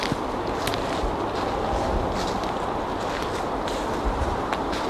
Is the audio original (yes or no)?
yes